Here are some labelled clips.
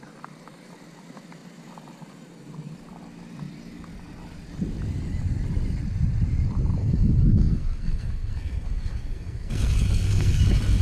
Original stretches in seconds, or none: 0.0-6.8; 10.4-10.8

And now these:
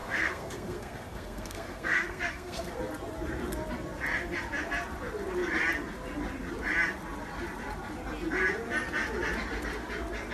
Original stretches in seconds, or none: 2.8-10.3

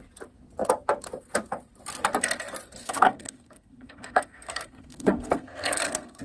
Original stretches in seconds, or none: 0.0-2.8

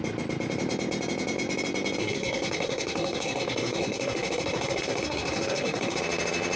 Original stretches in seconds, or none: 0.0-2.0; 6.0-6.6